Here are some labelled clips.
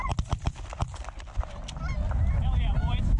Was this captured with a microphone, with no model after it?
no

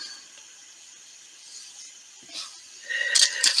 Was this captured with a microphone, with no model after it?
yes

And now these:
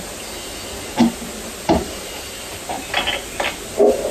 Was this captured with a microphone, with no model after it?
yes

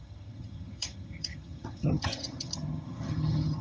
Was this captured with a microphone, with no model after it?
no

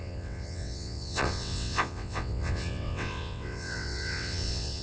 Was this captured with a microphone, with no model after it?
no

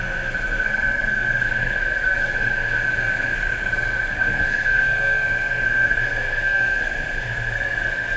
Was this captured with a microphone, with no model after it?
no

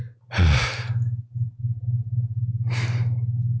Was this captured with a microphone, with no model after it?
yes